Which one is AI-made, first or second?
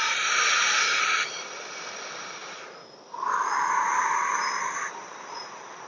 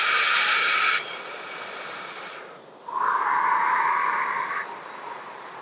first